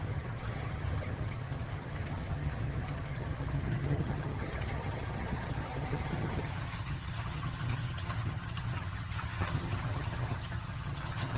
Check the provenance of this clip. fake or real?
fake